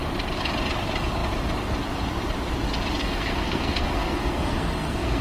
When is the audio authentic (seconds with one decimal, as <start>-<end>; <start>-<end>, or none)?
0.0-3.0